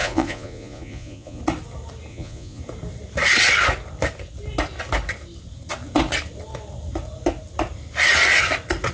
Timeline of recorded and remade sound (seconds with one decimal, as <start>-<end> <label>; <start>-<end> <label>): 0.0-1.4 remade; 1.4-2.1 recorded; 2.1-2.6 remade; 2.6-8.9 recorded